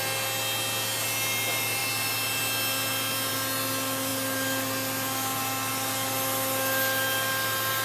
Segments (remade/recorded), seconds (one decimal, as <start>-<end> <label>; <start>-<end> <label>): 0.0-7.8 recorded